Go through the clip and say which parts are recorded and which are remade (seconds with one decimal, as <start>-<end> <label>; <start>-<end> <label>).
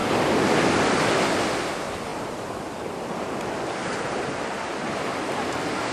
0.0-3.8 recorded; 3.8-5.2 remade; 5.2-5.9 recorded